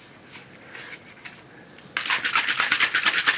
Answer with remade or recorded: recorded